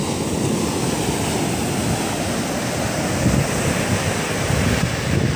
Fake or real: real